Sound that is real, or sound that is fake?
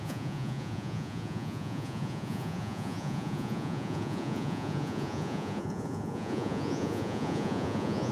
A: fake